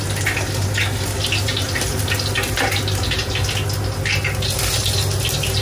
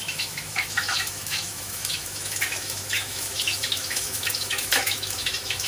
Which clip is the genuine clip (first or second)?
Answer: first